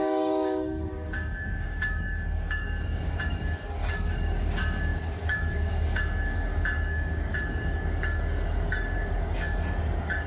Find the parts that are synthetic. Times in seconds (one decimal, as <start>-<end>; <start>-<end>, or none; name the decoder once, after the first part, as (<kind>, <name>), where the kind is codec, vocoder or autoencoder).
0.0-10.3 (codec, DAC)